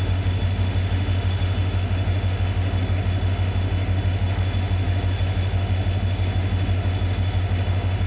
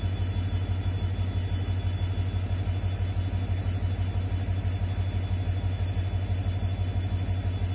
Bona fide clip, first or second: second